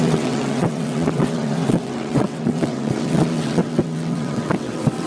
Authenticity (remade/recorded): remade